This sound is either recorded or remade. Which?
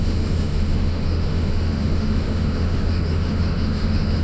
remade